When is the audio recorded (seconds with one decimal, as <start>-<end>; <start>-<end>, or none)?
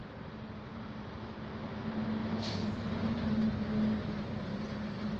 1.3-2.2; 2.9-4.5